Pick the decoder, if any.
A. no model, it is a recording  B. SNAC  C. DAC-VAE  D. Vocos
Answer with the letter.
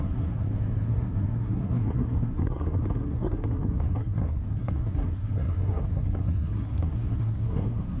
B